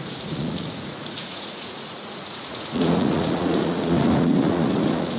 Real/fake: fake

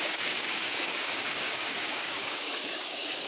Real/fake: fake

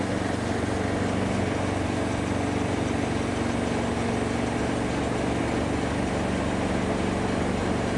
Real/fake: real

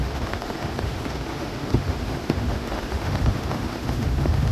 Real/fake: fake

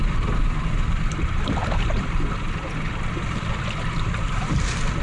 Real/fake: fake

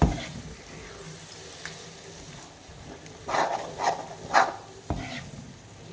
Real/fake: fake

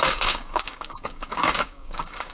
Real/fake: fake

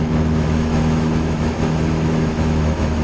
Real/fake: fake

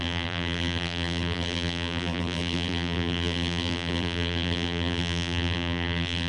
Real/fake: fake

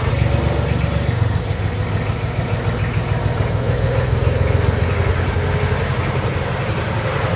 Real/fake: real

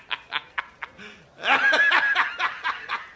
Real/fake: real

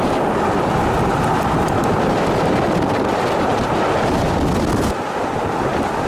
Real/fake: real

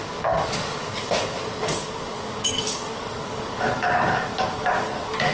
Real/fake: fake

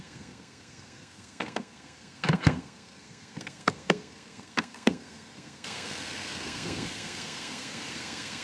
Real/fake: fake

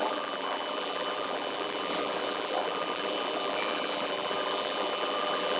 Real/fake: fake